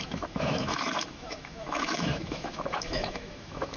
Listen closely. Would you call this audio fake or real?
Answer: fake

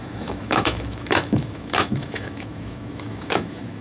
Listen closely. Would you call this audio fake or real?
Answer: fake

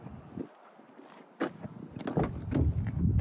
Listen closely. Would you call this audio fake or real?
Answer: real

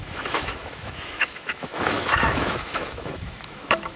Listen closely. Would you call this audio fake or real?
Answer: fake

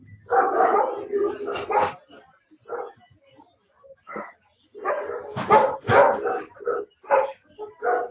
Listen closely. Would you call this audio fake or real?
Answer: real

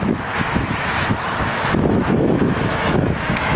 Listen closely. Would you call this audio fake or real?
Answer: fake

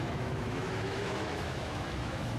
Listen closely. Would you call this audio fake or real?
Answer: fake